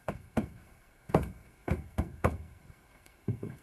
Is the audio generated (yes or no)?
yes